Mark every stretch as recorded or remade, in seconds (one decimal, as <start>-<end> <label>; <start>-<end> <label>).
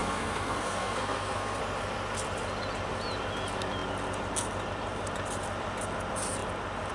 0.0-1.6 remade; 1.6-6.9 recorded